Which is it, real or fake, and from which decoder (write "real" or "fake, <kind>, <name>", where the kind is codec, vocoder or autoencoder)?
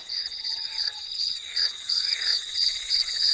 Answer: fake, vocoder, WaveNeXt